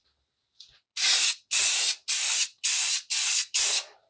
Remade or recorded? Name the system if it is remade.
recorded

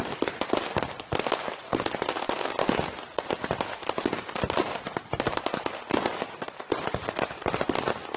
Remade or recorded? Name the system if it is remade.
recorded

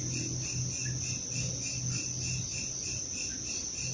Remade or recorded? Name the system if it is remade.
recorded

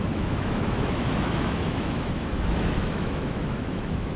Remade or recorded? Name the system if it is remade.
remade, autoencoder, DAC-VAE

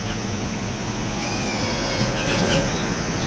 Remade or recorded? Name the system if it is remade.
remade, vocoder, Vocos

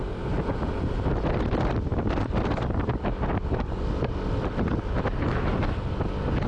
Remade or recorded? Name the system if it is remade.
recorded